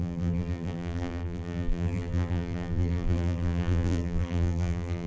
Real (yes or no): no